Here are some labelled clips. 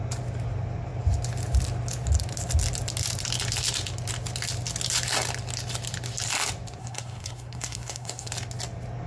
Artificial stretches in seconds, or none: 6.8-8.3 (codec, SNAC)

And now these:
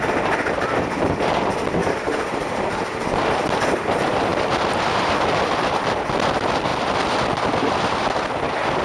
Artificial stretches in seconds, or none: none

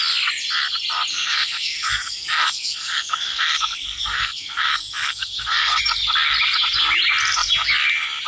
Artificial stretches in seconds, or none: 1.1-5.8 (codec, SNAC)

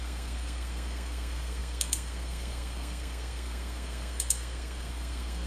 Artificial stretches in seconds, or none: 0.0-5.5 (codec, SNAC)

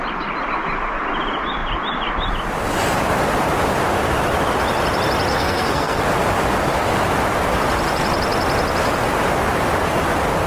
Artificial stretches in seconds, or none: 5.3-6.0 (codec, SNAC)